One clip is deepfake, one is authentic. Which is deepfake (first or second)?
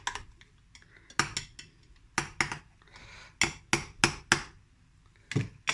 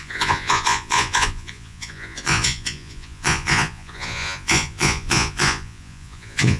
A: second